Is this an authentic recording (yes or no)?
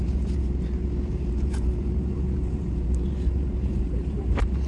no